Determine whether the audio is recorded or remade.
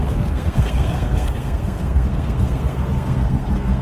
remade